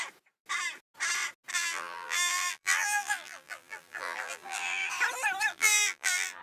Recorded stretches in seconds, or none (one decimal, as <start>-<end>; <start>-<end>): 0.0-1.5; 4.9-5.5